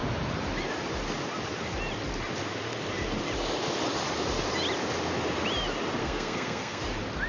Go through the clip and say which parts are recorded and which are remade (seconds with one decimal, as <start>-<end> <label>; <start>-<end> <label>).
0.0-6.0 recorded; 6.0-6.8 remade; 6.8-7.3 recorded